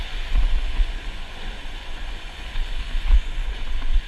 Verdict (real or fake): fake